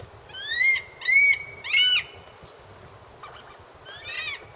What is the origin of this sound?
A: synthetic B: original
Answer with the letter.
B